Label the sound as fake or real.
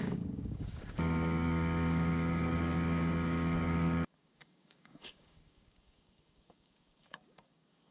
fake